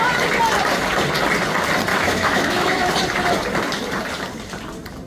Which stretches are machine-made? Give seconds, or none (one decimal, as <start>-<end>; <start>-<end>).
1.9-2.9